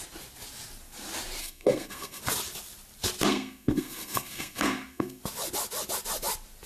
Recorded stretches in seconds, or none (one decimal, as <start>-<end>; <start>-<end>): 0.0-1.4; 2.2-3.3; 5.2-6.7